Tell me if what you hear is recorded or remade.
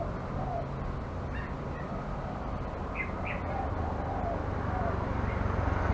recorded